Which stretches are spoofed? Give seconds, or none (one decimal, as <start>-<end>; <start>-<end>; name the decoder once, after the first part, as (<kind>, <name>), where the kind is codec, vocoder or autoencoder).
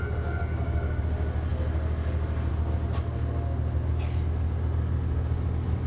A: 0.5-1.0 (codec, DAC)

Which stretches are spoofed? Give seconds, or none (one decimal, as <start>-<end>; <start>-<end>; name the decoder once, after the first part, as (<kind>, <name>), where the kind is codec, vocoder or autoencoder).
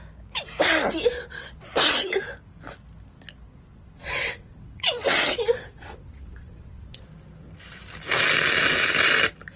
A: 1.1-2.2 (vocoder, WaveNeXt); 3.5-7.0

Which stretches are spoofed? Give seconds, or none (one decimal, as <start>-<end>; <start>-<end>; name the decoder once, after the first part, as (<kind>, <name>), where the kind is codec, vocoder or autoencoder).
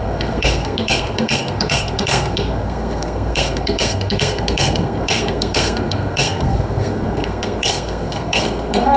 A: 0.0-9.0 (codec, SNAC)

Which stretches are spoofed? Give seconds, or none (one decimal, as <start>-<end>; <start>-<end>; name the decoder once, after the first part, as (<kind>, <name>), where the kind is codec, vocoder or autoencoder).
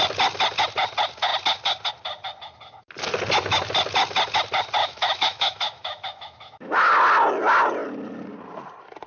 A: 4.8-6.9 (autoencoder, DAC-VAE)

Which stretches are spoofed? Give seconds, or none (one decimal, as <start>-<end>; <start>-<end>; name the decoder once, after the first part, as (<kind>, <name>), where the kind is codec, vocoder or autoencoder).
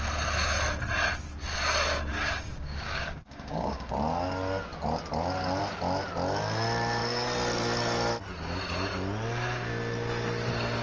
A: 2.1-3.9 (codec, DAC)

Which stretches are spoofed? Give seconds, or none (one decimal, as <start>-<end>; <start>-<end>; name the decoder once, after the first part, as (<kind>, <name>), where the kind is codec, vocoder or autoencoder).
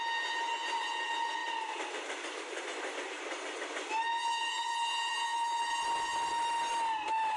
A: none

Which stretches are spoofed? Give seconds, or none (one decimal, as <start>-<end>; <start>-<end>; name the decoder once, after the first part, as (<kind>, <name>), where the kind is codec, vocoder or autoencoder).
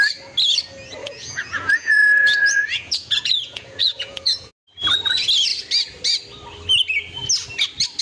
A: 1.0-4.5 (vocoder, Vocos)